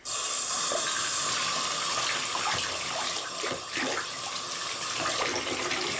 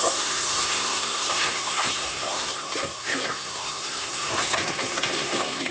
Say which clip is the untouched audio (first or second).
first